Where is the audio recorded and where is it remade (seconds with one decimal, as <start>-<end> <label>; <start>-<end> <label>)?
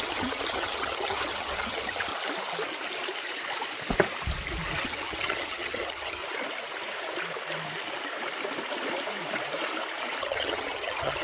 0.0-2.1 remade; 2.1-4.7 recorded; 4.7-6.2 remade; 6.2-10.2 recorded; 10.2-11.2 remade